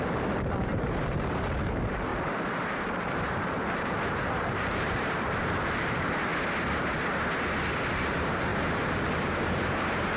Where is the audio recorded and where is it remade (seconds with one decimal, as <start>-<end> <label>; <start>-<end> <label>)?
0.0-2.1 remade; 2.1-2.7 recorded; 2.7-6.3 remade; 6.3-7.9 recorded; 7.9-10.2 remade